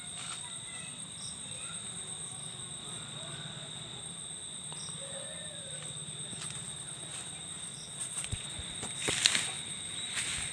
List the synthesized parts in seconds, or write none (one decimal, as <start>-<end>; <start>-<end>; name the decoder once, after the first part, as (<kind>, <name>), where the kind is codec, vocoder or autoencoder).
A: 2.8-4.0 (vocoder, Vocos); 7.7-8.5